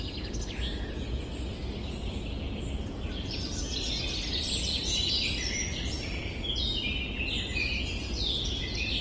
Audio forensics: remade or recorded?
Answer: recorded